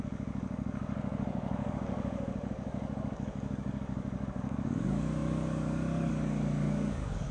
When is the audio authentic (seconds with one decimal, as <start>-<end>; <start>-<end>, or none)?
none